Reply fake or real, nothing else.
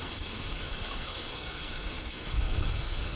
fake